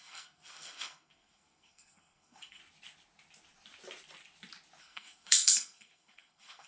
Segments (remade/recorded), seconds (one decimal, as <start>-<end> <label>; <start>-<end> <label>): 0.0-2.6 remade; 2.6-4.8 recorded; 4.8-6.7 remade